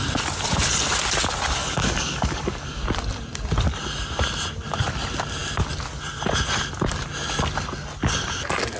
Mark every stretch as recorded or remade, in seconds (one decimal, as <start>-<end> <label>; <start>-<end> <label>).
0.0-1.6 recorded; 1.6-2.8 remade; 2.8-8.8 recorded